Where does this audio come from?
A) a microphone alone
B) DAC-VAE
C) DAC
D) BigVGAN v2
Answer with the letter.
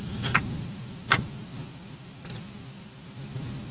A